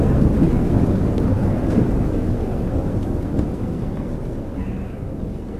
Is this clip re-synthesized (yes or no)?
yes